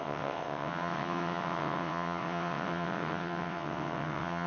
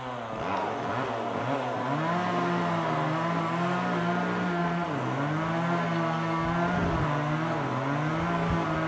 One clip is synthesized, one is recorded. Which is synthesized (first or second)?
first